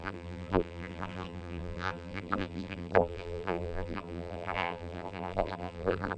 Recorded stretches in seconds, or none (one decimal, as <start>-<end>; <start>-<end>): none